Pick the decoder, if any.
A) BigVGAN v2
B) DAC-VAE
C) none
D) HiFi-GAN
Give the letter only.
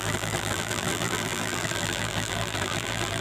A